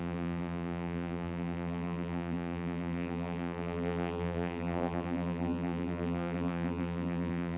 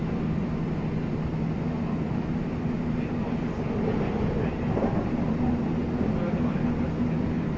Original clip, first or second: second